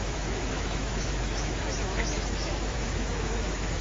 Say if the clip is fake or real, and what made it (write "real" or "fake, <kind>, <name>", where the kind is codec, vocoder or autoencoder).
fake, autoencoder, DAC-VAE